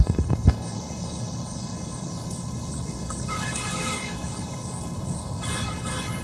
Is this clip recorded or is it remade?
remade